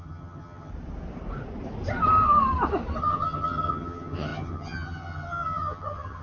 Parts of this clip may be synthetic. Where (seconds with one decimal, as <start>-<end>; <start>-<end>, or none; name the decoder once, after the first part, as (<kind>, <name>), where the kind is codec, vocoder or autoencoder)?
0.0-0.7 (vocoder, HiFi-GAN); 3.0-6.2